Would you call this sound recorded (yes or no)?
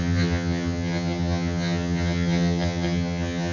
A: no